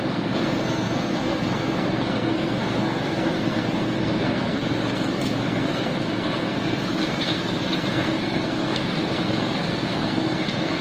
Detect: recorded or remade remade